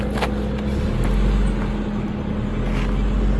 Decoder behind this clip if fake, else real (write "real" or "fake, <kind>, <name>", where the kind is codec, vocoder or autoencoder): real